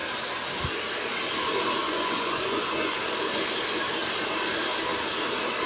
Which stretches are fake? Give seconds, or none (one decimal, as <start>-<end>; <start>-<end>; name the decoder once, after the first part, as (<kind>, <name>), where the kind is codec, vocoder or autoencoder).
1.8-3.0 (vocoder, Vocos)

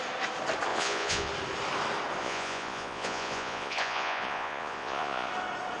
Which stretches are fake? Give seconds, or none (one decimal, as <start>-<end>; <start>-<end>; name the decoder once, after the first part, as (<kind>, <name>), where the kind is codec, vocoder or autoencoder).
0.7-1.3 (vocoder, Vocos); 2.2-5.3

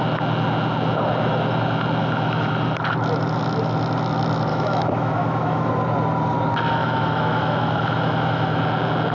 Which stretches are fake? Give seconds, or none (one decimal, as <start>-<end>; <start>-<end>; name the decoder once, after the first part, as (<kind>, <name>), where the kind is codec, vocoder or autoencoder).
2.0-2.5 (autoencoder, DAC-VAE); 4.5-5.7; 6.8-8.6

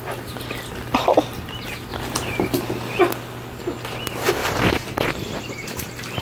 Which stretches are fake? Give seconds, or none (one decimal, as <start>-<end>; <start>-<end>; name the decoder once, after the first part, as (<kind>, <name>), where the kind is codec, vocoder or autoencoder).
1.9-3.0 (vocoder, BigVGAN v2); 4.4-6.2

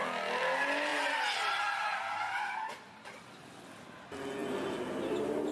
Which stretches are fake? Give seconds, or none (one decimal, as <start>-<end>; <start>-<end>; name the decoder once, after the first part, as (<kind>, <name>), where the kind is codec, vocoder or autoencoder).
none